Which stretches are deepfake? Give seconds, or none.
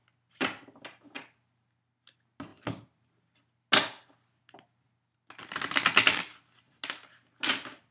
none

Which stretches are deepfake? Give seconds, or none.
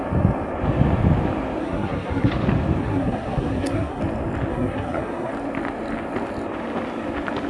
1.6-2.3 (codec, SNAC); 2.8-4.0; 4.5-5.3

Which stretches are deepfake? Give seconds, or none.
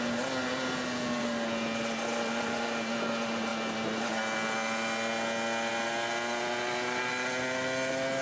none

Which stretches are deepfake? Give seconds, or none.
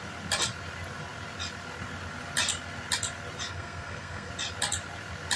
3.5-4.3 (codec, SNAC)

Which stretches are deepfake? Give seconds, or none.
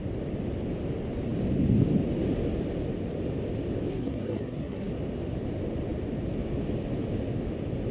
3.9-4.9 (codec, SNAC)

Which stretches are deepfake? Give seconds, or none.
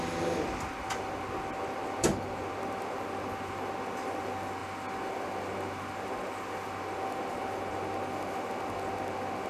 none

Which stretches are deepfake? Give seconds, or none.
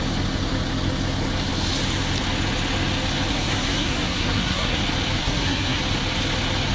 3.3-4.8 (codec, SNAC); 5.2-5.8